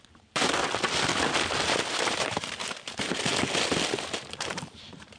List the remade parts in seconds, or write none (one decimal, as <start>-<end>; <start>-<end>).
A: 0.0-0.6; 2.2-3.3; 4.2-5.2